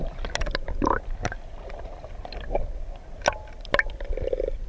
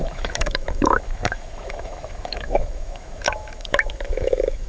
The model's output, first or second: second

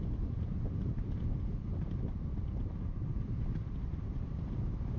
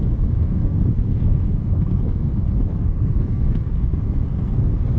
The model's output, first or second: second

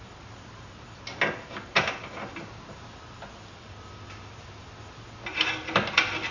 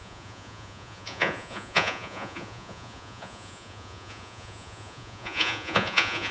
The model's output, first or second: second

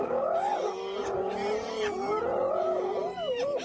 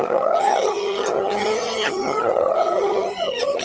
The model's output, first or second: second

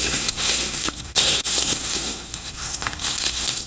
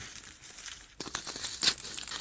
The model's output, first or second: first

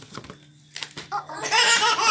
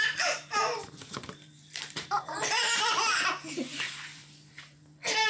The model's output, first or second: second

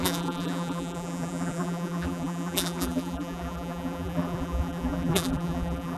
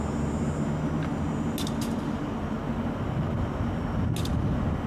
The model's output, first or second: first